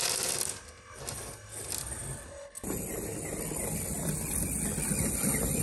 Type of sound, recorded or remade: recorded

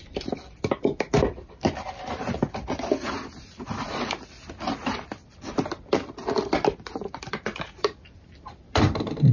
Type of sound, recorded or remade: recorded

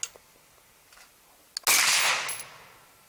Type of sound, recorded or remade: recorded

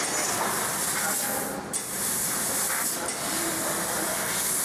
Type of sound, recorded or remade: remade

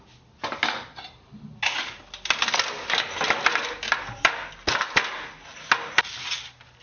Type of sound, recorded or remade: recorded